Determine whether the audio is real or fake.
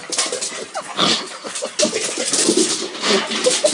real